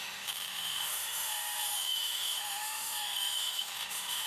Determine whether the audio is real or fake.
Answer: fake